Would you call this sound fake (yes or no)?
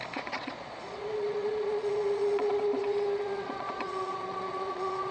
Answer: yes